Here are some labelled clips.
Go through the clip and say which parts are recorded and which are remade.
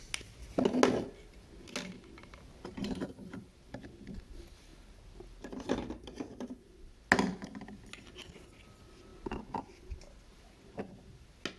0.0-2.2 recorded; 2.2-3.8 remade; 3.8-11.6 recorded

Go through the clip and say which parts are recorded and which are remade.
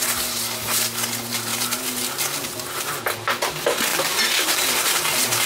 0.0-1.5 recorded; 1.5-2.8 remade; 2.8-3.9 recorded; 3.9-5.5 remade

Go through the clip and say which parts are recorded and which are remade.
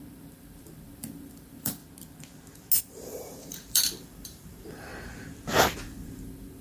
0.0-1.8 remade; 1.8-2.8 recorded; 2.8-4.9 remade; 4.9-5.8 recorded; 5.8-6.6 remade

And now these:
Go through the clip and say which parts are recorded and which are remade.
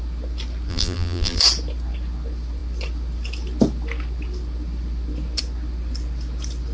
0.0-0.7 recorded; 0.7-1.4 remade; 1.4-6.7 recorded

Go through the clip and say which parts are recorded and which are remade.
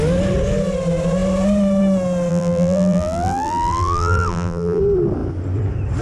0.0-2.3 recorded; 2.3-4.8 remade; 4.8-6.0 recorded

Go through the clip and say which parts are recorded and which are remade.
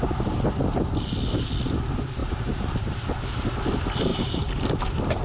0.0-2.2 recorded; 2.2-3.0 remade; 3.0-4.1 recorded; 4.1-5.2 remade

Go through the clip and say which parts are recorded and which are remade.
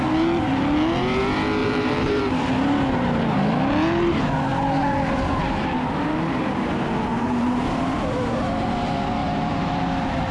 0.0-1.6 recorded; 1.6-2.2 remade; 2.2-7.1 recorded; 7.1-7.8 remade; 7.8-9.2 recorded; 9.2-10.3 remade